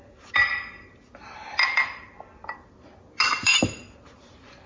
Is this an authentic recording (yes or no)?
yes